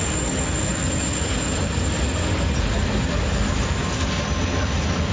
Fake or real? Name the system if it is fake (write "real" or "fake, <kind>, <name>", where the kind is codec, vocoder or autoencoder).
real